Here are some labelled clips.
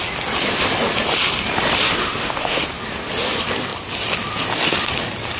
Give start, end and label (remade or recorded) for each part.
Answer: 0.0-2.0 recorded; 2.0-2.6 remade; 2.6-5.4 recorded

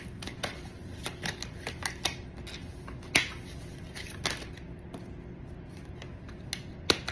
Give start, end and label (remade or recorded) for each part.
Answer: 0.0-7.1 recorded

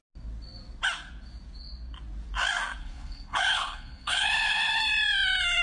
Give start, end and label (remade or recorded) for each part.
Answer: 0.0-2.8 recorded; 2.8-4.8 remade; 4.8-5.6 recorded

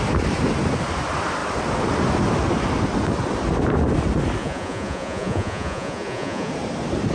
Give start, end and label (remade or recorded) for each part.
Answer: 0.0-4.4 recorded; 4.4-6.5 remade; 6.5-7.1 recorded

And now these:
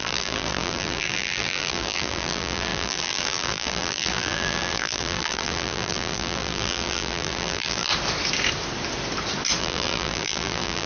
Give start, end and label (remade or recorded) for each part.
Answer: 0.0-7.9 remade; 7.9-9.6 recorded; 9.6-10.9 remade